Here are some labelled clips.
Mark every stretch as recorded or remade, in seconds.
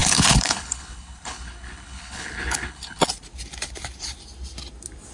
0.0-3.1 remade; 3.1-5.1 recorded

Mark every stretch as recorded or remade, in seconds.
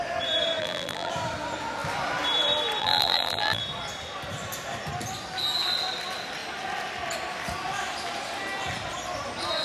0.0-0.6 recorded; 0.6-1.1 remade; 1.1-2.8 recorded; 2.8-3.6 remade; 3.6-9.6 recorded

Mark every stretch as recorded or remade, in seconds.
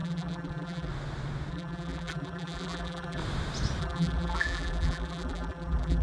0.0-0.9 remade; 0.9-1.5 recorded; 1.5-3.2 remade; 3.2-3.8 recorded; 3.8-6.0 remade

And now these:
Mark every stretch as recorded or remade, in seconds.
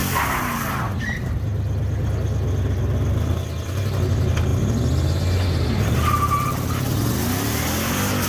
0.0-8.3 recorded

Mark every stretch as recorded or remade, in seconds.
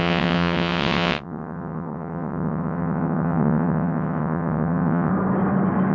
0.0-5.1 remade; 5.1-5.9 recorded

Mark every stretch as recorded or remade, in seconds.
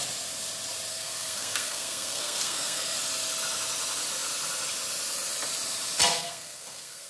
0.0-0.9 recorded; 0.9-3.0 remade; 3.0-6.1 recorded; 6.1-7.1 remade